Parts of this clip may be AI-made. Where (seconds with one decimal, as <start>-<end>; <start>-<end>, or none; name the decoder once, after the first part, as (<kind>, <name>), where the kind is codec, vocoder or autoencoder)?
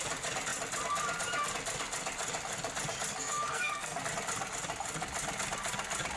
3.1-4.0 (codec, SNAC)